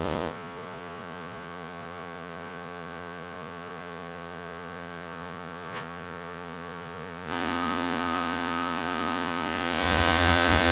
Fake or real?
fake